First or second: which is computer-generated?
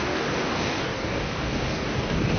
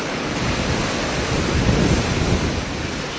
first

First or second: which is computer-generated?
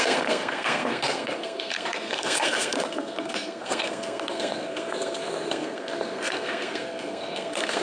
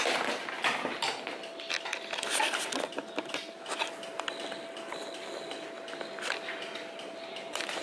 first